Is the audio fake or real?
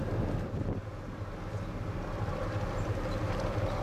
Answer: real